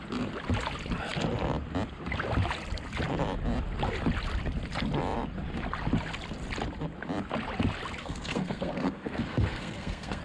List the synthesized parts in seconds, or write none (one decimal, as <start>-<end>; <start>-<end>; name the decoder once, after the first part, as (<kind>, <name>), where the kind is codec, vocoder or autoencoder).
8.0-10.2 (codec, SNAC)